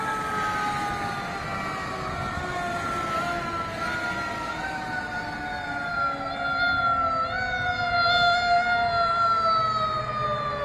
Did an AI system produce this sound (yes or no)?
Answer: no